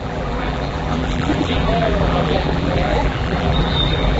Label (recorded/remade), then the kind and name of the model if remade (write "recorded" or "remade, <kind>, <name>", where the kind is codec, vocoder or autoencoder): remade, vocoder, BigVGAN v2